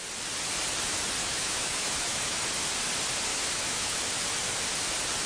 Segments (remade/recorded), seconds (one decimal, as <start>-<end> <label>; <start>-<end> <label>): 0.0-1.2 recorded; 1.2-2.4 remade; 2.4-3.3 recorded; 3.3-4.0 remade; 4.0-5.3 recorded